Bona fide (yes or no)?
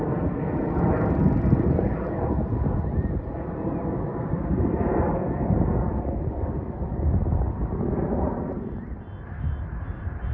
yes